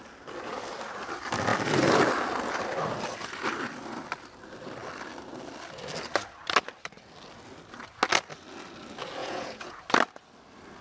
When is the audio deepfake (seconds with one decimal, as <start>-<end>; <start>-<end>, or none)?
9.2-9.8